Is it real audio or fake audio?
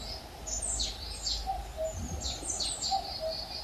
real